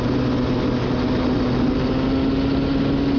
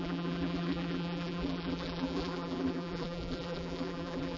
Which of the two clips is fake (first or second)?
second